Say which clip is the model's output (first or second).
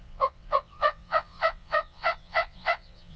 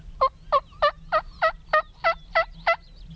first